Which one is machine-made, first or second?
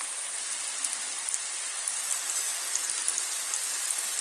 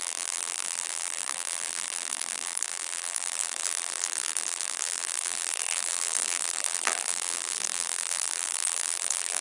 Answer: second